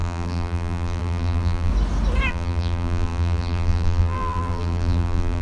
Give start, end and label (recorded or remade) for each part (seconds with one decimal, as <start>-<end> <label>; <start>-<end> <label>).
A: 0.0-1.7 remade; 1.7-2.3 recorded; 2.3-5.4 remade